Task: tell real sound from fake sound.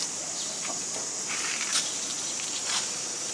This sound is real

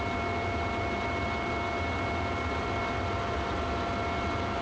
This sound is real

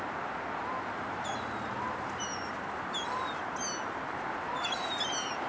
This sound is fake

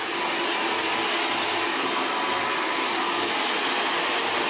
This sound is real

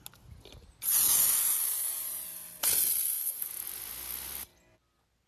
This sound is real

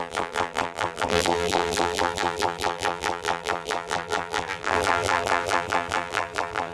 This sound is fake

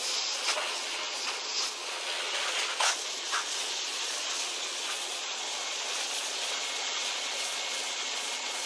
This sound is fake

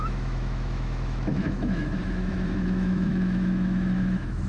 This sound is fake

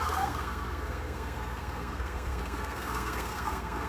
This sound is fake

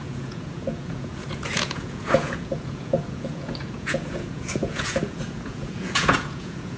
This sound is fake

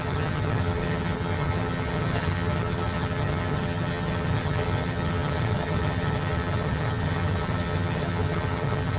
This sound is fake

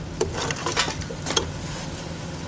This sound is real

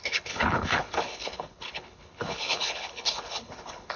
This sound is fake